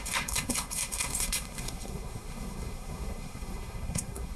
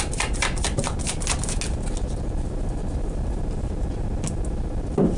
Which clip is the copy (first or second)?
first